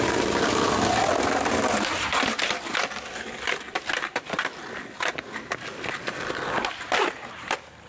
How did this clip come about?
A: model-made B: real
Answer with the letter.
B